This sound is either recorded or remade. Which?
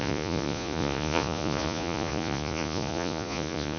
remade